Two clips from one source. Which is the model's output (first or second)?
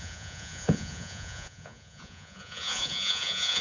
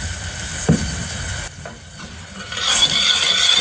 first